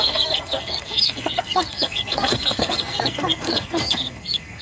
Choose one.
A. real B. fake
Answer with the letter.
B